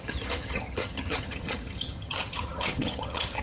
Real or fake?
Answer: fake